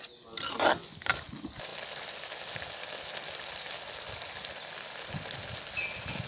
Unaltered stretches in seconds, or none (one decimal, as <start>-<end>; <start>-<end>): 0.0-6.3